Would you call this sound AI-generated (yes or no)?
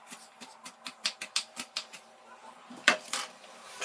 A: yes